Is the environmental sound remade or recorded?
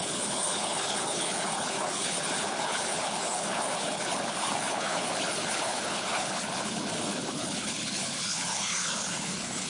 remade